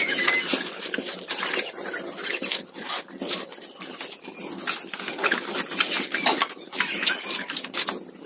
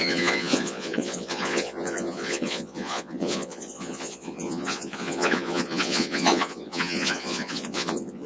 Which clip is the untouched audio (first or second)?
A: first